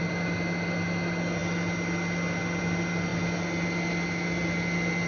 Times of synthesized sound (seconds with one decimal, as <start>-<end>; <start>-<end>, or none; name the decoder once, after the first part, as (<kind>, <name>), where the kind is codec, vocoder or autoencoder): none